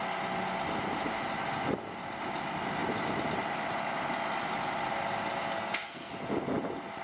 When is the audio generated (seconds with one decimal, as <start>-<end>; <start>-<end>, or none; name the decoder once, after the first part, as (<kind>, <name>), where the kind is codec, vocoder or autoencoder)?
5.5-6.1 (codec, SNAC)